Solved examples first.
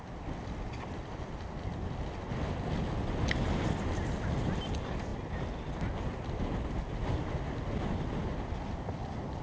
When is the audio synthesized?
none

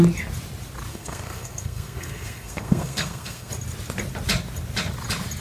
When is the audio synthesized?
0.9-3.5 (codec, SNAC)

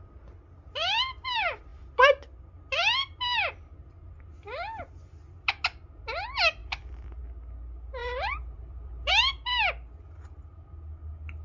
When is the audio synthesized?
6.6-7.2 (vocoder, BigVGAN v2); 8.0-9.1

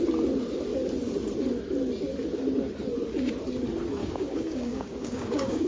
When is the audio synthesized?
4.0-5.7 (codec, DAC)

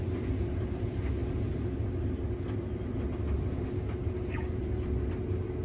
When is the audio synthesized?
none

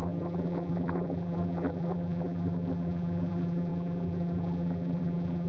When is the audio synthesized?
0.0-5.5 (vocoder, BigVGAN v2)